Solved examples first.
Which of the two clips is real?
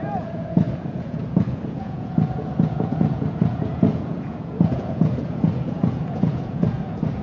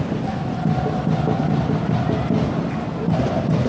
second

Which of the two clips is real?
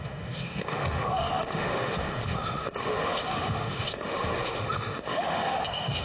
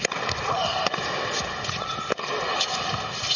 second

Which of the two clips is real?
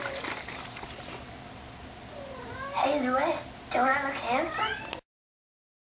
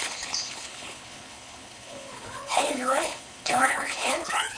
first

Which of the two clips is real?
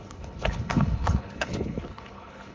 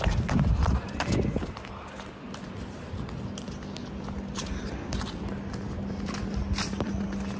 second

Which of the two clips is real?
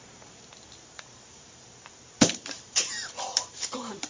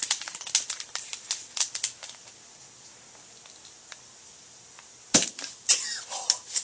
second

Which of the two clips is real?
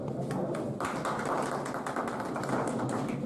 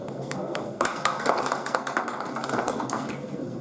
first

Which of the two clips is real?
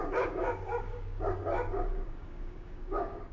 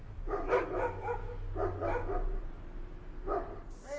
second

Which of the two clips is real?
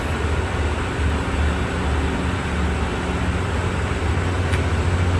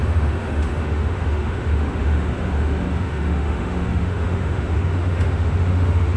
first